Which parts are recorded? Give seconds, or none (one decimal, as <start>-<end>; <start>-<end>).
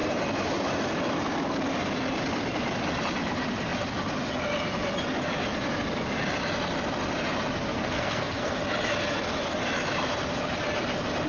0.0-7.7; 8.6-11.3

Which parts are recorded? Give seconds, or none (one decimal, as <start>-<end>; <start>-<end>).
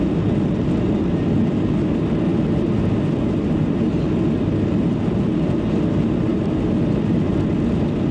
0.0-8.1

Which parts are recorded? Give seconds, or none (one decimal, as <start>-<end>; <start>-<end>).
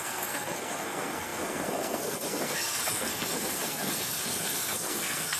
none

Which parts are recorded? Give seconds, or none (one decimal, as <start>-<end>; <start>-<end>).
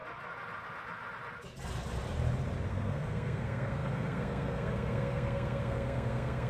0.0-2.7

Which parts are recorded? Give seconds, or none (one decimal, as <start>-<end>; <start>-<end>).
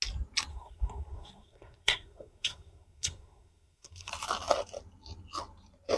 0.0-0.5; 4.1-6.0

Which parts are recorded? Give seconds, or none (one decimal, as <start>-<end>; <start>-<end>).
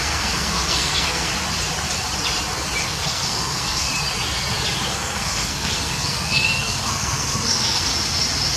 1.3-2.8; 3.9-4.9; 7.9-8.6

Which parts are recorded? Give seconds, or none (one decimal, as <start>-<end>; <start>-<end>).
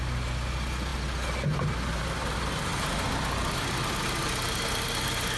0.0-5.4